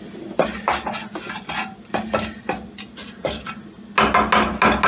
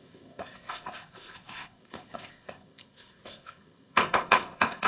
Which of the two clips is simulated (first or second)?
second